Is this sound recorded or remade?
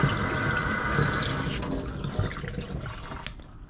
recorded